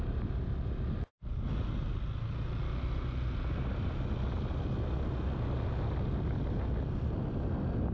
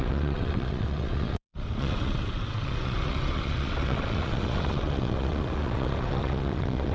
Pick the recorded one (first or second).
first